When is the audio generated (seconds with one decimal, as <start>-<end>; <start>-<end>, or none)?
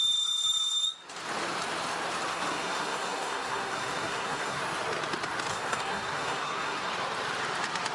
2.3-4.6; 5.5-6.9